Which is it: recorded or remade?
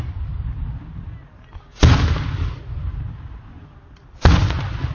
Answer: recorded